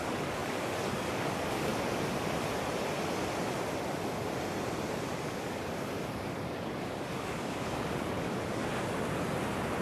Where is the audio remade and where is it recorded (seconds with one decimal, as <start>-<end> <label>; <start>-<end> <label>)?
0.0-1.7 remade; 1.7-5.2 recorded; 5.2-8.7 remade; 8.7-9.8 recorded